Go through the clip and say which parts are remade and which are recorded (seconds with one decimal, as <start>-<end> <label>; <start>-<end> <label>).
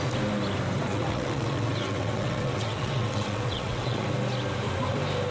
0.0-0.9 recorded; 0.9-4.1 remade; 4.1-5.3 recorded